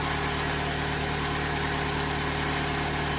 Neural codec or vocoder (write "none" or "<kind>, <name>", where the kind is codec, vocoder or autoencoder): none